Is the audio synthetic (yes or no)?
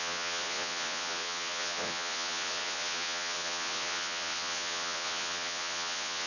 yes